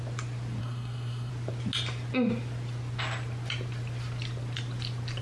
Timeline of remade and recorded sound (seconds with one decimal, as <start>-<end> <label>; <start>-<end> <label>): 0.0-0.6 recorded; 0.6-1.3 remade; 1.3-5.2 recorded

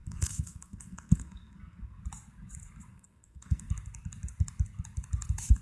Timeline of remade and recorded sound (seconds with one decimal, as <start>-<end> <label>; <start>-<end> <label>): 0.0-2.0 remade; 2.0-2.9 recorded; 2.9-3.7 remade; 3.7-5.6 recorded

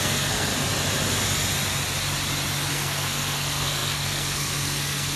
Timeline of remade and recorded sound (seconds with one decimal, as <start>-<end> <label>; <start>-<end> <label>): 0.0-0.5 remade; 0.5-2.7 recorded; 2.7-5.2 remade

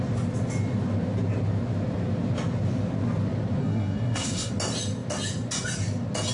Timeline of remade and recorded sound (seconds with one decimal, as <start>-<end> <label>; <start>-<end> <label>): 0.0-3.6 recorded; 3.6-4.5 remade; 4.5-6.3 recorded